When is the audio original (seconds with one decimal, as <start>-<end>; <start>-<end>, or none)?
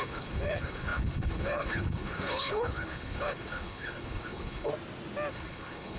4.7-5.3